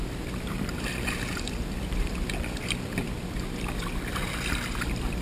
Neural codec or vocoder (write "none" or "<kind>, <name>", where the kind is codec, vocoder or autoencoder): vocoder, BigVGAN v2